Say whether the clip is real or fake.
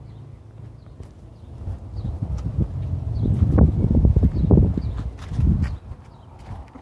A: real